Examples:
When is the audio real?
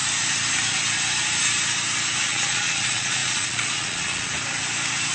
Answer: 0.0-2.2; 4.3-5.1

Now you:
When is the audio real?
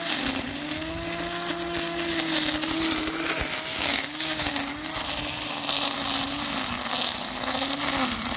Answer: 0.0-3.7; 4.5-8.4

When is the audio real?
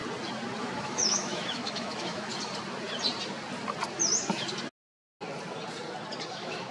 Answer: 0.0-0.6; 2.3-6.3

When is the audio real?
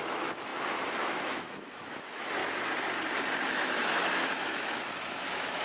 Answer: 2.4-3.5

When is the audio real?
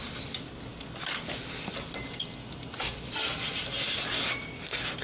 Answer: 0.0-5.0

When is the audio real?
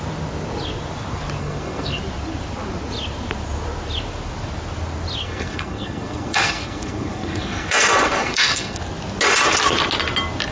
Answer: 0.0-1.4; 2.0-5.2; 8.8-10.5